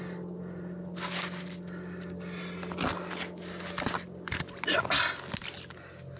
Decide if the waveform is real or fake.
real